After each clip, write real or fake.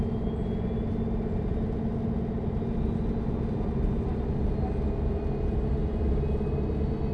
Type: real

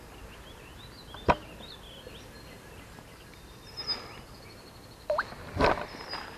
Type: real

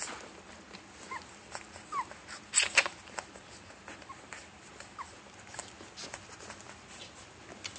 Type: real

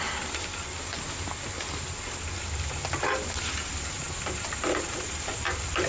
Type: real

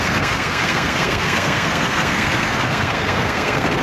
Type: fake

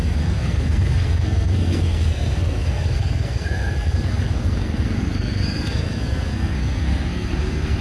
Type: fake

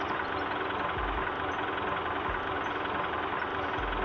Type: real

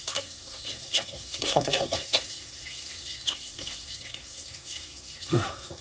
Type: fake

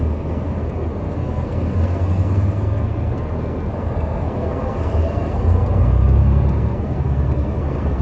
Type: fake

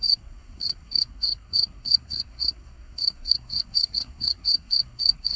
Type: fake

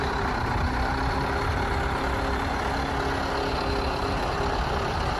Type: real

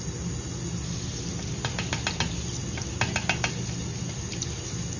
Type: real